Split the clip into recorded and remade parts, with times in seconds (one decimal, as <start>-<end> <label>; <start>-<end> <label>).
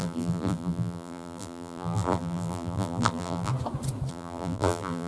0.0-3.5 remade; 3.5-4.1 recorded; 4.1-5.1 remade